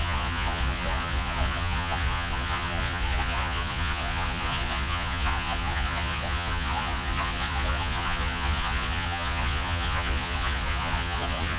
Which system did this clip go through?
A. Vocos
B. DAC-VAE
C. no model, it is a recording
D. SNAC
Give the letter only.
A